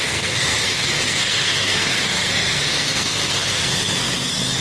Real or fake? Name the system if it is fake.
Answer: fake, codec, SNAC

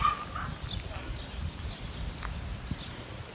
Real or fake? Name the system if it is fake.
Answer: real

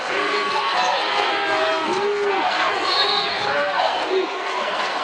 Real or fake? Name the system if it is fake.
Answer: fake, codec, SNAC